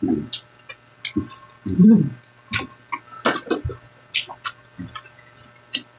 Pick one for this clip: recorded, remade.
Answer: recorded